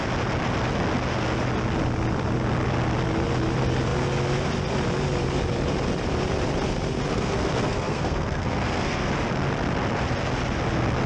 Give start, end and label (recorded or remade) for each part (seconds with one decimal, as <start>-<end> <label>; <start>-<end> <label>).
0.0-7.1 recorded; 7.1-9.1 remade; 9.1-11.1 recorded